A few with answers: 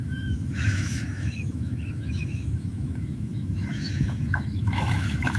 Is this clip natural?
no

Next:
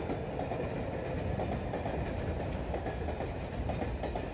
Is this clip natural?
yes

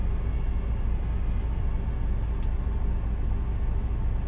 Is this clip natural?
yes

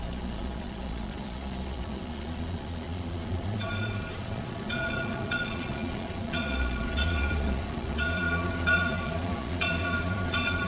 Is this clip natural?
no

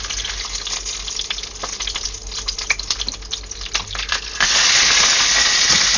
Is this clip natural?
yes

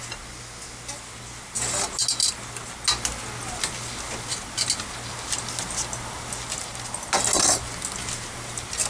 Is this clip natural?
yes